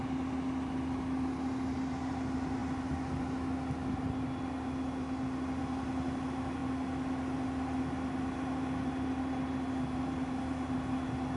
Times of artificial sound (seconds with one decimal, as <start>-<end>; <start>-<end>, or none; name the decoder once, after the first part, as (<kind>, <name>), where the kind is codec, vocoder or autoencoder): none